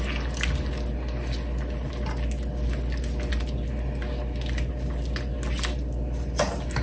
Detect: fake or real real